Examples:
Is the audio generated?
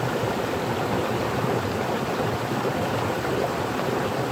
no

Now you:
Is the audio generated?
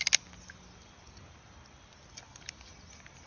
no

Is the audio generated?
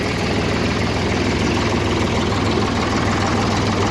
no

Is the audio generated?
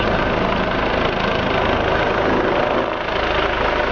no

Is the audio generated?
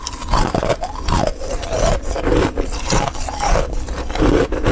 no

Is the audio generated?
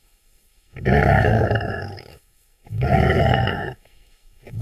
yes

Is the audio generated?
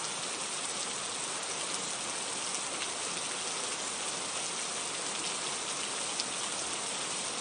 no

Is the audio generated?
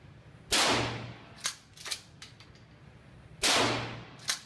no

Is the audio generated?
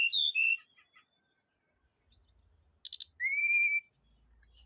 no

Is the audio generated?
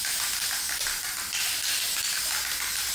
no